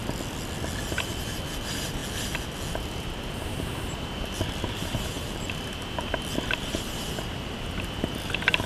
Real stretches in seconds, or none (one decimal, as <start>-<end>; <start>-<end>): 0.0-0.8; 2.0-2.8